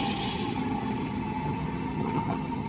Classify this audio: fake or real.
fake